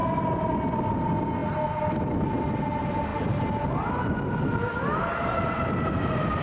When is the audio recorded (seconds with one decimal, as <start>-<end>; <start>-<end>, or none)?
0.0-6.4